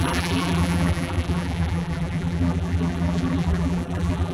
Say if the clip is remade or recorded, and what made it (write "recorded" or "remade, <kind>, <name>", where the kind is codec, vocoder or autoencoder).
remade, vocoder, BigVGAN v2